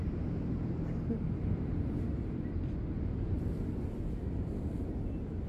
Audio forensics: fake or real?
real